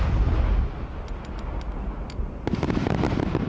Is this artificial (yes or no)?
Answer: no